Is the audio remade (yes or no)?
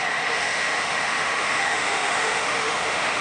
yes